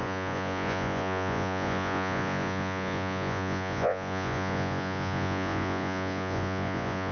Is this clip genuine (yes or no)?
no